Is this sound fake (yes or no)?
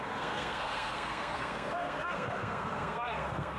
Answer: yes